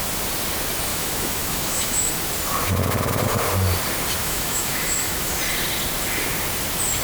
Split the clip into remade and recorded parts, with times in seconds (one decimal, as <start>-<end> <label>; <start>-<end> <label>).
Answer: 0.0-0.9 recorded; 0.9-2.1 remade; 2.1-4.2 recorded; 4.2-5.4 remade; 5.4-7.0 recorded